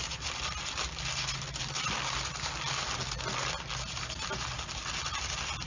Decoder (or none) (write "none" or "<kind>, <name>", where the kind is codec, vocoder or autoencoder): none